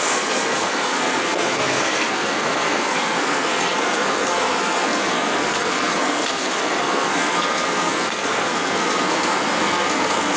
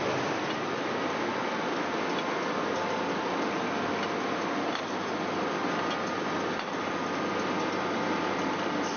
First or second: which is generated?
first